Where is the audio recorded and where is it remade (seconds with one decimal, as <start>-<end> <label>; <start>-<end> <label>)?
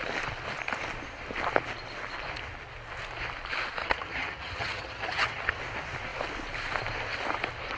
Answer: 0.0-3.8 recorded; 3.8-5.6 remade; 5.6-7.8 recorded